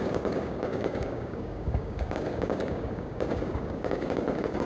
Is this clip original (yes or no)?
no